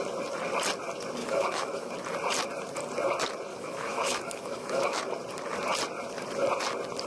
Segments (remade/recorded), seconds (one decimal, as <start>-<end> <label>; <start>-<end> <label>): 0.0-1.2 recorded; 1.2-1.9 remade; 1.9-3.5 recorded; 3.5-5.0 remade; 5.0-7.1 recorded